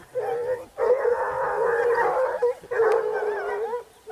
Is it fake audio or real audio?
real